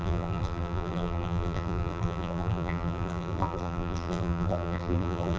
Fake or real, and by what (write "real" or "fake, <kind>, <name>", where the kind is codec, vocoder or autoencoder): fake, vocoder, BigVGAN v2